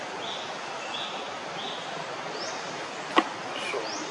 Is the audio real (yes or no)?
yes